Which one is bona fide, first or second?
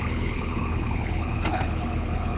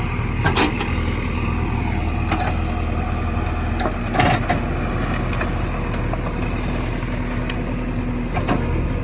second